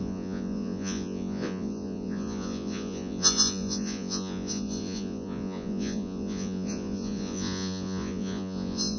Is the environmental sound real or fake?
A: fake